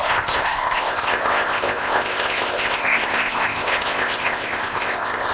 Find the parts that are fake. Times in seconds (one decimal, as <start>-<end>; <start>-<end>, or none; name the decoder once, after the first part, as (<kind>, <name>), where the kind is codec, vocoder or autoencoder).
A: 0.0-5.3 (codec, ZipCodec)